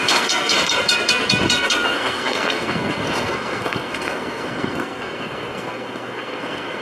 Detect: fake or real fake